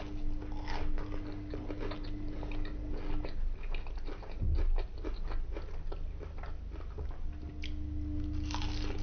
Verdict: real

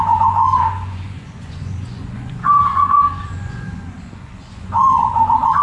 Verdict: fake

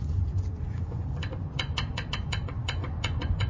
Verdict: fake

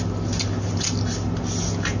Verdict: real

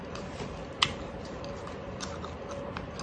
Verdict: real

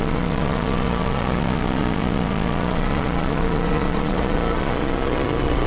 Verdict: fake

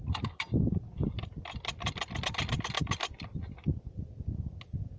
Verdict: real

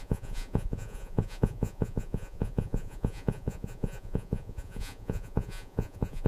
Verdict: fake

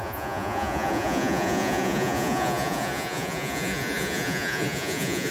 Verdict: fake